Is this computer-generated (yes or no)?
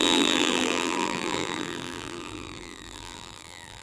yes